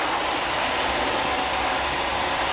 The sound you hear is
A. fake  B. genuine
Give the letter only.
B